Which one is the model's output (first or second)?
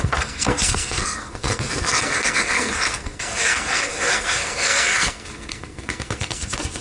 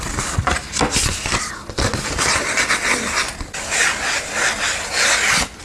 first